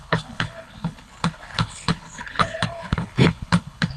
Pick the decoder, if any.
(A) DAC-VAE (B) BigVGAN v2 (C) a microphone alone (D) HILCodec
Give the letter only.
D